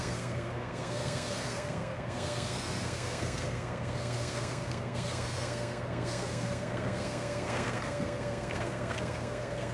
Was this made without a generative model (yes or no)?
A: no